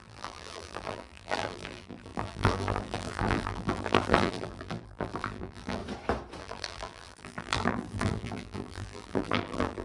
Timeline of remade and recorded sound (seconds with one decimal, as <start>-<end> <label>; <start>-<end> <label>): 0.0-5.8 remade; 5.8-6.4 recorded; 6.4-9.8 remade